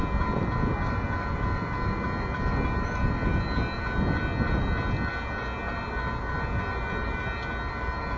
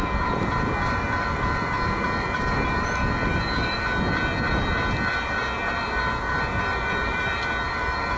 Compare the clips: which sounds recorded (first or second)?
first